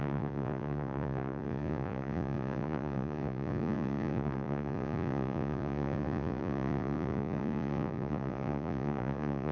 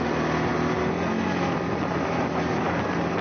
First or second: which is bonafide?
second